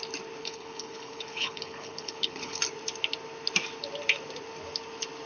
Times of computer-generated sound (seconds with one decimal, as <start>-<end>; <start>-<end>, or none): 0.4-2.6